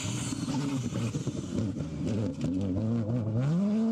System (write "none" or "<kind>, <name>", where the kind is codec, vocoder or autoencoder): none